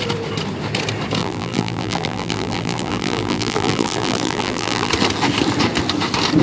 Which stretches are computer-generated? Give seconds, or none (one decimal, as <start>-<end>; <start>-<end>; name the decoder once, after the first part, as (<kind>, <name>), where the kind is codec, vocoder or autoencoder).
1.2-4.9 (vocoder, BigVGAN v2)